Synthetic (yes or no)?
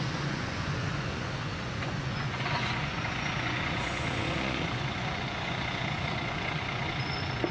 yes